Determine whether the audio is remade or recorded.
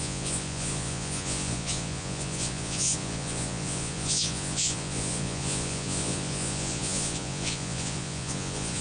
remade